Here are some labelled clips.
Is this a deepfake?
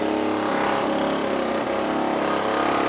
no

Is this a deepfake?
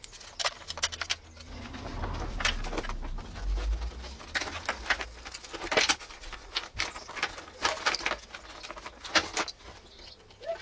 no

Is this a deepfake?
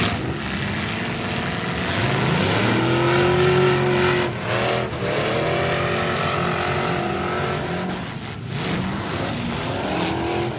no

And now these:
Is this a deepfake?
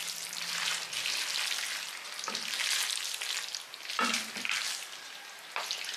no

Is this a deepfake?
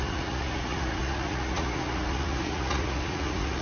yes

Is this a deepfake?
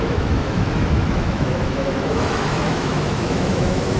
yes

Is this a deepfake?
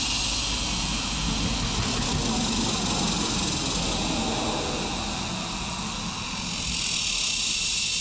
no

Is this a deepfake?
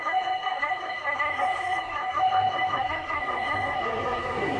yes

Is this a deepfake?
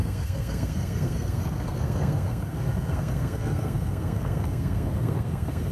yes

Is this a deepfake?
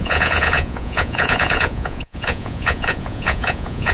yes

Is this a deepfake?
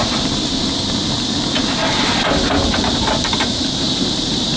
no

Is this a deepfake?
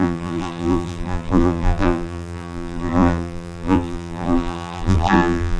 yes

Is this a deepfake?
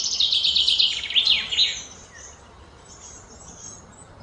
no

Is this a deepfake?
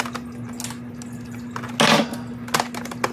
no